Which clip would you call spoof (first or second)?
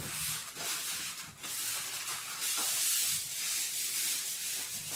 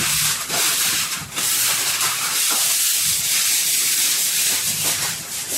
second